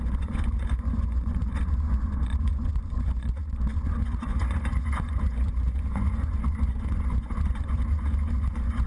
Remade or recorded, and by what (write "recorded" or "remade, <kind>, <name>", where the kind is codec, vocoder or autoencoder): remade, vocoder, Vocos